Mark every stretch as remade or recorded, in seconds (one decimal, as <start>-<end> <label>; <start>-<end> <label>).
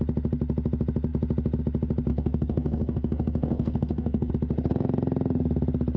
0.0-2.1 recorded; 2.1-4.3 remade; 4.3-6.0 recorded